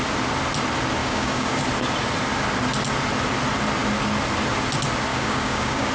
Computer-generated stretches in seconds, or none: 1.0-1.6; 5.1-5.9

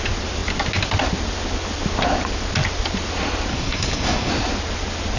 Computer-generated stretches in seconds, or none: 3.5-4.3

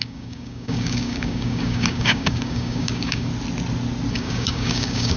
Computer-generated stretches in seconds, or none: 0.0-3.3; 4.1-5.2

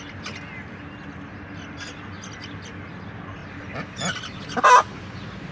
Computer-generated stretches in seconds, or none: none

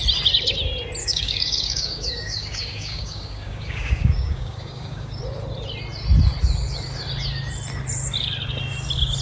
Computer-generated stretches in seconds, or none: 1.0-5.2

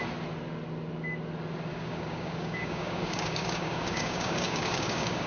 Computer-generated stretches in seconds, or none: 1.7-5.3

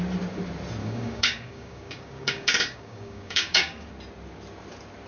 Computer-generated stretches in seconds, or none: 0.8-3.9

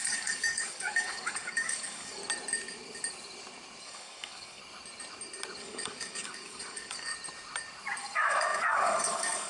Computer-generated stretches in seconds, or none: 0.0-2.2; 3.8-4.6; 5.6-7.1; 8.0-9.5